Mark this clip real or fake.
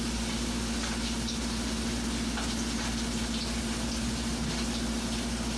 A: real